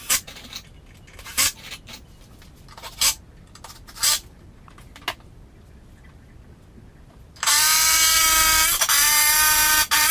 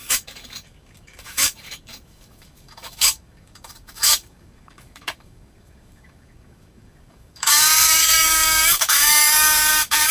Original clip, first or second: first